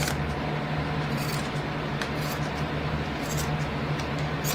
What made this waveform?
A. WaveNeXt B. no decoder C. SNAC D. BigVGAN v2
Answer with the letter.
B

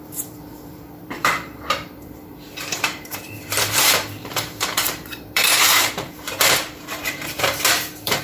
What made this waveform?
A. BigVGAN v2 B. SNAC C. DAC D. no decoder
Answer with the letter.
A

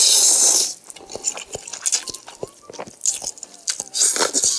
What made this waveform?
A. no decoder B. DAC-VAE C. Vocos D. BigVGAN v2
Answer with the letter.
A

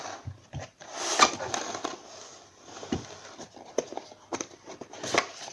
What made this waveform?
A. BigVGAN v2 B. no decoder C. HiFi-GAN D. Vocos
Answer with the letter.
A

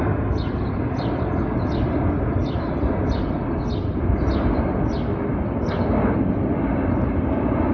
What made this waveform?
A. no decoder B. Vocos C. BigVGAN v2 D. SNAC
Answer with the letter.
A